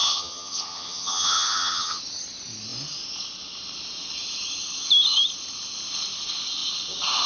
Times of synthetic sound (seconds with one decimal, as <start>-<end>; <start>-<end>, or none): 0.0-2.0